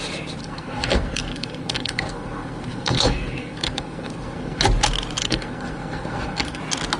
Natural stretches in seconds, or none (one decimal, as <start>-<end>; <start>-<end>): 0.0-0.4; 4.6-5.2; 6.6-7.0